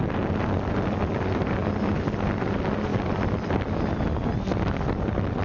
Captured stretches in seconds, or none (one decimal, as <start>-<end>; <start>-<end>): 0.0-5.4